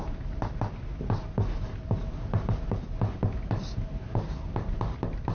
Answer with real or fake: real